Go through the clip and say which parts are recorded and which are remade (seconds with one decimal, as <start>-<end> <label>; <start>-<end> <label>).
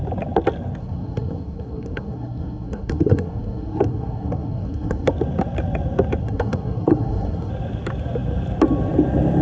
0.0-0.8 recorded; 0.8-5.1 remade; 5.1-6.2 recorded; 6.2-7.5 remade; 7.5-9.4 recorded